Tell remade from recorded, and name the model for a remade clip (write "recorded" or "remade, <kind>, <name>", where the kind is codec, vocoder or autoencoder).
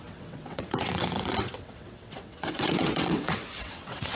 remade, vocoder, WaveNeXt